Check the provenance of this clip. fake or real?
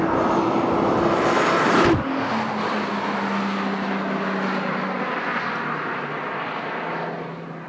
real